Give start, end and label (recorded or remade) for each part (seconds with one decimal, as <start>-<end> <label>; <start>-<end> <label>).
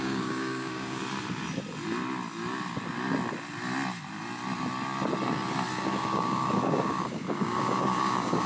0.0-1.0 remade; 1.0-5.8 recorded; 5.8-8.5 remade